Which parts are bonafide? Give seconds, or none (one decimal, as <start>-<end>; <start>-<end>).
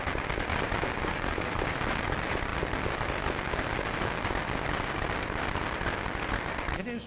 0.0-0.5; 2.0-7.1